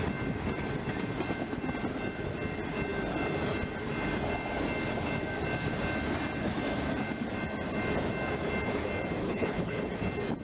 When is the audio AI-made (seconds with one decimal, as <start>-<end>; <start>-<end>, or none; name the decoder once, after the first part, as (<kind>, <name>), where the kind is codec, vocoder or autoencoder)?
9.2-9.9 (codec, HILCodec)